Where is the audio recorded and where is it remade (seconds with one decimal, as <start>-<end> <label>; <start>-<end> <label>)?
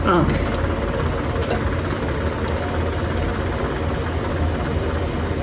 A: 0.0-5.4 recorded